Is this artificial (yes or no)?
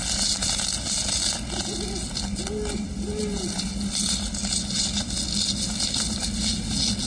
no